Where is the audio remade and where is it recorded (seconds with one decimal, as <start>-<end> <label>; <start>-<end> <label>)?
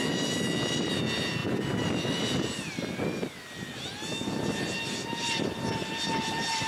0.0-6.7 recorded